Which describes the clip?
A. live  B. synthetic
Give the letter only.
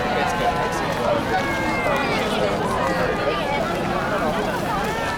A